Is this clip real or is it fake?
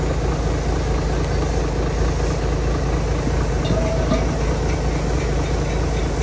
real